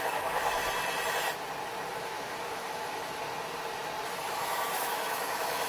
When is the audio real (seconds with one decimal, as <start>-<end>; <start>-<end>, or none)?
0.6-1.9; 3.2-4.1